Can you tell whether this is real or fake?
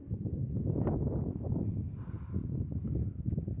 real